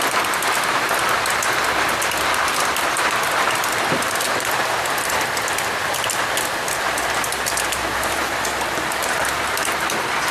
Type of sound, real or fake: fake